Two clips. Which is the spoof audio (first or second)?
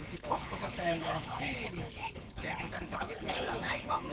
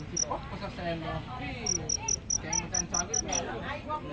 first